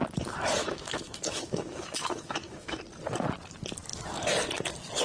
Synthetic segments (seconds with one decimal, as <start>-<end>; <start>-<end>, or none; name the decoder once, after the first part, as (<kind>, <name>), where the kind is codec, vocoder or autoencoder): 0.6-2.8 (autoencoder, DAC-VAE)